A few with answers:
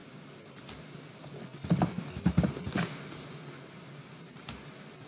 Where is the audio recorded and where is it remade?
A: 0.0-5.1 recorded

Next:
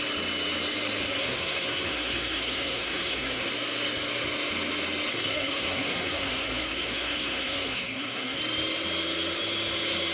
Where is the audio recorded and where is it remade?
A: 0.0-1.1 recorded; 1.1-3.5 remade; 3.5-5.1 recorded; 5.1-8.4 remade; 8.4-10.1 recorded

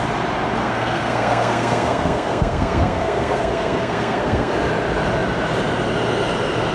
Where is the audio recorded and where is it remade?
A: 0.0-0.6 recorded; 0.6-4.5 remade; 4.5-6.7 recorded

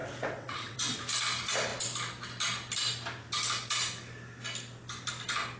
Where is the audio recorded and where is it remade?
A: 0.0-1.0 remade; 1.0-5.6 recorded

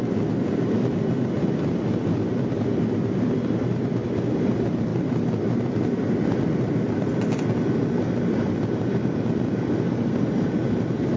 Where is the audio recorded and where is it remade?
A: 0.0-11.2 remade

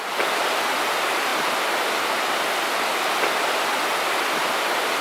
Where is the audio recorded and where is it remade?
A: 0.0-5.0 recorded

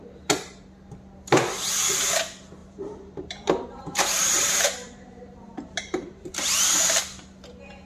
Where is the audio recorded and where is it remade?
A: 0.0-2.6 recorded; 2.6-6.3 remade; 6.3-7.9 recorded